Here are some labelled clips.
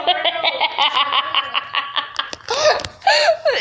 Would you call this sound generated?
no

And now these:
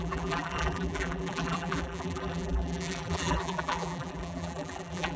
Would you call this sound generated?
yes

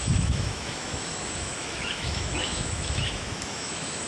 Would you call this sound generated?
yes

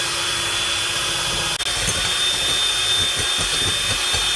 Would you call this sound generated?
no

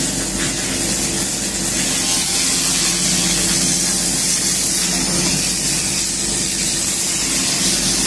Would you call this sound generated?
no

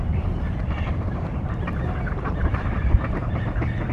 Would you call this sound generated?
yes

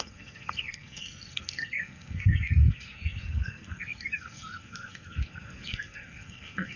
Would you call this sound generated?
yes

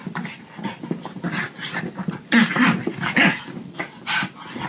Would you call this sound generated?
no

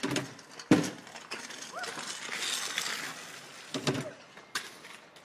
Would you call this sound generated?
no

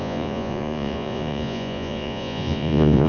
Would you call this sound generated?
yes